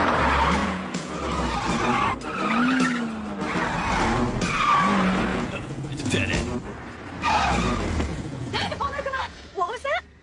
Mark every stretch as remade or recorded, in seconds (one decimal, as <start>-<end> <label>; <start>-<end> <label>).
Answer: 0.0-0.6 recorded; 0.6-1.1 remade; 1.1-5.3 recorded; 5.3-6.0 remade; 6.0-8.1 recorded; 8.1-9.5 remade; 9.5-10.2 recorded

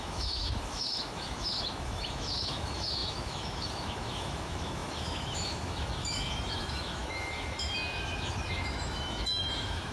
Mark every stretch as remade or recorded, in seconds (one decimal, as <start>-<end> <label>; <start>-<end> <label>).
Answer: 0.0-9.9 remade

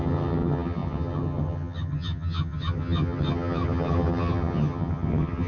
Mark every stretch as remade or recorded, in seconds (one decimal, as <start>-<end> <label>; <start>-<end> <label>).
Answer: 0.0-5.5 remade